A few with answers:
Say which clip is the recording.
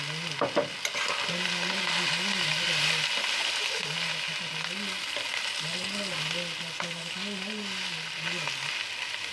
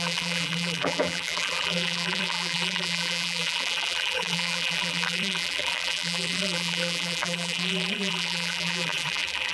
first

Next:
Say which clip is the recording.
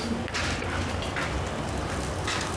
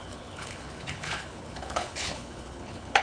first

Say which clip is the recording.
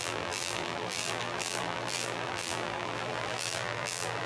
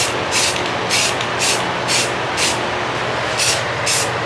second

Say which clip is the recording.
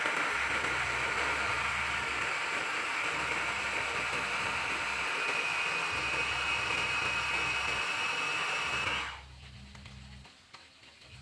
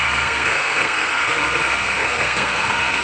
first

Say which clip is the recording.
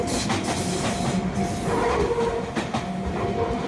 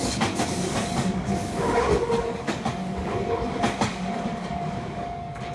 first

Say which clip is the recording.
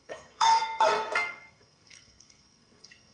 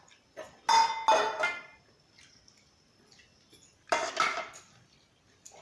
second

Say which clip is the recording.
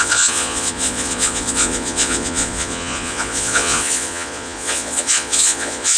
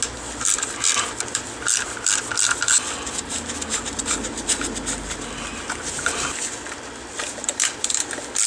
second